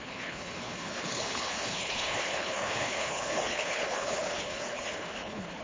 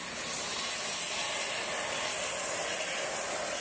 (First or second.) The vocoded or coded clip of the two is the first